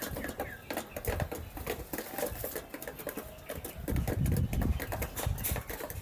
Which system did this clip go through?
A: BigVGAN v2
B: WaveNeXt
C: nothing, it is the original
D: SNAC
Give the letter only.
C